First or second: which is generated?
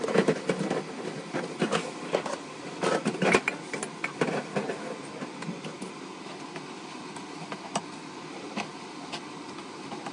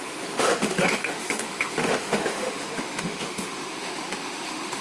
second